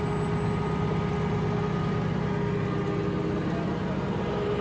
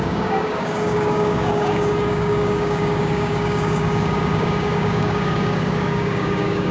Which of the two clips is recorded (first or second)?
first